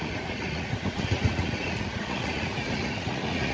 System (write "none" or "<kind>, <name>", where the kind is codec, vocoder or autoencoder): vocoder, Vocos